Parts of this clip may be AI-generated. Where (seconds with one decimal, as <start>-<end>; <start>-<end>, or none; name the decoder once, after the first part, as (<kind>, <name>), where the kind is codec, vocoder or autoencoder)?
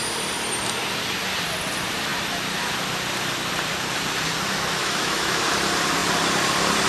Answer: 4.8-5.4 (autoencoder, DAC-VAE)